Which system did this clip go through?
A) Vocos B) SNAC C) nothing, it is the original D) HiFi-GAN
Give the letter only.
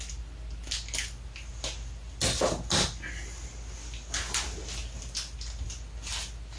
C